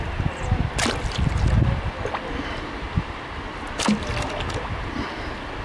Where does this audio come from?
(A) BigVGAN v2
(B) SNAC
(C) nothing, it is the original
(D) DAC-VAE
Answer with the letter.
C